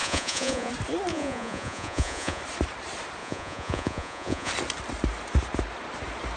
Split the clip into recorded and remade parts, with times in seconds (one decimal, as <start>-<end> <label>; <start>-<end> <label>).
0.0-0.7 remade; 0.7-1.1 recorded; 1.1-2.4 remade; 2.4-3.2 recorded; 3.2-4.5 remade; 4.5-6.4 recorded